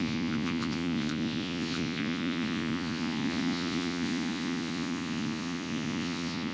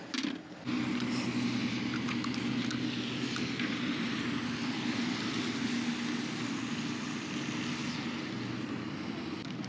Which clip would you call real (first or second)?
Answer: second